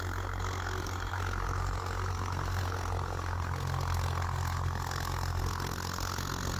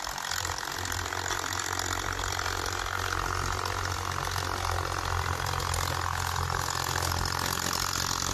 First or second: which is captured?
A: second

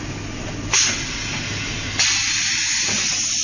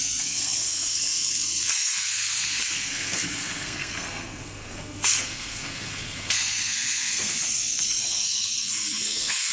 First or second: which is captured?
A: first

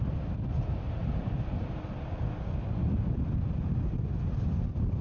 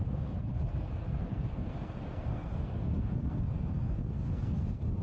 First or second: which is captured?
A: first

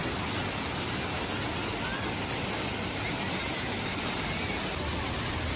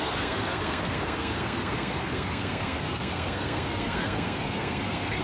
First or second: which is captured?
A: first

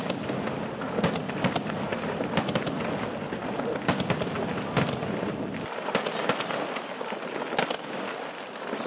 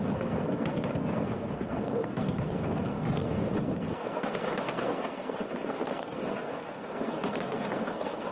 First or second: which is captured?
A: first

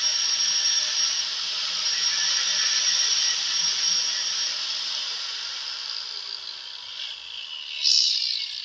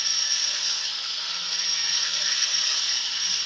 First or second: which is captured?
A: first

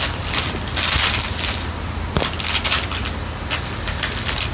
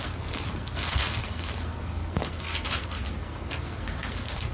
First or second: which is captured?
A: first